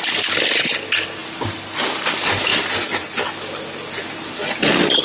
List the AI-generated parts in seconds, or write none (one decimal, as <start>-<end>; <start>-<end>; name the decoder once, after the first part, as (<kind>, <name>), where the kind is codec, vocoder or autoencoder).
1.2-2.0 (vocoder, BigVGAN v2); 2.5-3.2; 4.4-5.0